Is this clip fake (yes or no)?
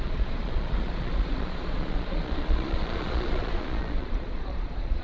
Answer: yes